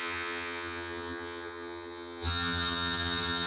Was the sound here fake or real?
fake